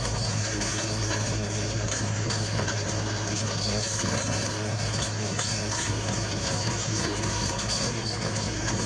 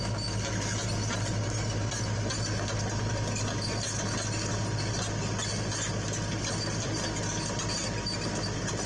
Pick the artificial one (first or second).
first